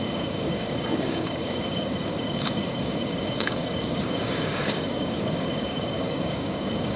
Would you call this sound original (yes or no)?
no